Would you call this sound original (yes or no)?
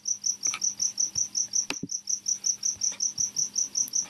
yes